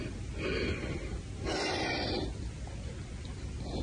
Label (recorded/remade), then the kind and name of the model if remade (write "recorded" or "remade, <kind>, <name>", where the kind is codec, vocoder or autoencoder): recorded